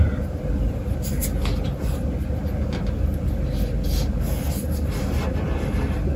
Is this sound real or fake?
real